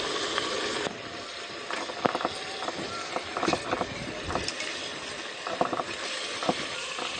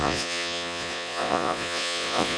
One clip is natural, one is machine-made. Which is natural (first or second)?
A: first